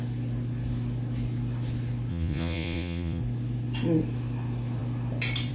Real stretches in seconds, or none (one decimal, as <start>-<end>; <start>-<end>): 0.0-2.1; 3.2-5.5